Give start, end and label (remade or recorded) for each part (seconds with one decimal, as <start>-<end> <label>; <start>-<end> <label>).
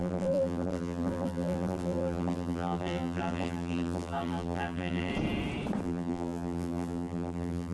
0.0-5.1 remade; 5.1-5.8 recorded; 5.8-7.7 remade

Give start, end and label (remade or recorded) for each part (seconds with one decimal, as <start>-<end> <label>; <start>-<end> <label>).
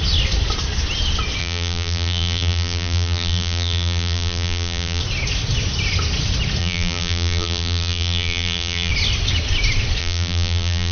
0.0-1.4 recorded; 1.4-5.0 remade; 5.0-6.6 recorded; 6.6-8.9 remade; 8.9-10.0 recorded; 10.0-10.9 remade